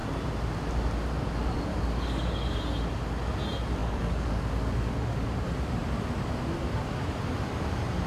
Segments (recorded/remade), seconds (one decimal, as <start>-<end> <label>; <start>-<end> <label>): 0.0-1.7 recorded; 1.7-2.6 remade; 2.6-3.8 recorded; 3.8-5.3 remade; 5.3-8.1 recorded